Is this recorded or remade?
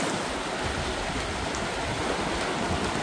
recorded